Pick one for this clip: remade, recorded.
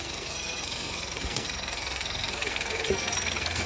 remade